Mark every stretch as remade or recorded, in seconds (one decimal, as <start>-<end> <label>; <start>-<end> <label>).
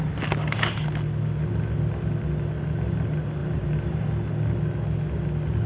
0.0-3.4 recorded; 3.4-4.0 remade; 4.0-5.7 recorded